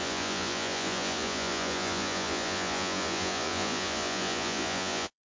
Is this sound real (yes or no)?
no